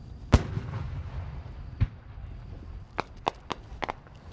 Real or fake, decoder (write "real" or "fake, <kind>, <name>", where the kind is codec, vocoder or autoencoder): real